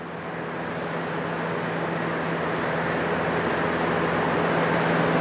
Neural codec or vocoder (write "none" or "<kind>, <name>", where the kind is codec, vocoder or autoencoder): none